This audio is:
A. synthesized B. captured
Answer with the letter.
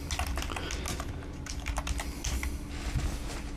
B